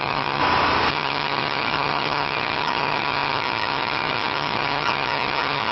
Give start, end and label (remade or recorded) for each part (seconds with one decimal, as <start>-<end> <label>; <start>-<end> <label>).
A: 0.0-0.4 remade; 0.4-0.9 recorded; 0.9-5.7 remade